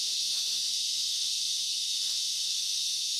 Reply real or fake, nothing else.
fake